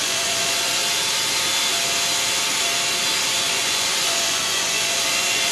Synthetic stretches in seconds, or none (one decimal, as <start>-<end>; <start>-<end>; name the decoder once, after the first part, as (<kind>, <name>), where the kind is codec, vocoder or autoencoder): 0.0-0.8 (vocoder, Vocos); 3.3-5.5